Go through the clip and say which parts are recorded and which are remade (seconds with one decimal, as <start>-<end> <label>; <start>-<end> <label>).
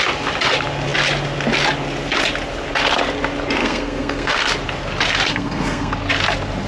0.0-3.6 recorded; 3.6-4.4 remade; 4.4-5.3 recorded; 5.3-5.9 remade; 5.9-6.7 recorded